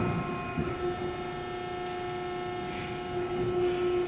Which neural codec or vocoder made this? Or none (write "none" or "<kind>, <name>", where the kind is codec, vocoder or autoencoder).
none